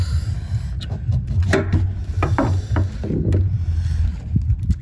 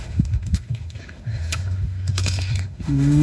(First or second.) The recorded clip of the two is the first